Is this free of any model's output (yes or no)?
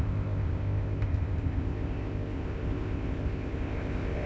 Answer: no